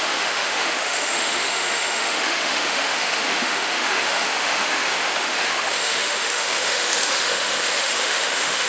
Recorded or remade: remade